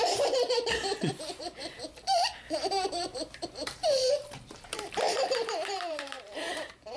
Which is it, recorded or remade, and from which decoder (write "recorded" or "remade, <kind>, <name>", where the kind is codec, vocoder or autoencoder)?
remade, vocoder, BigVGAN v2